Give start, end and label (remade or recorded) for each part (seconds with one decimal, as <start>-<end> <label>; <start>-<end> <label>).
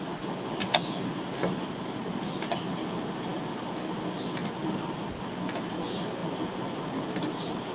0.0-7.7 recorded